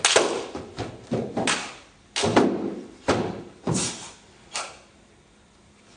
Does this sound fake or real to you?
real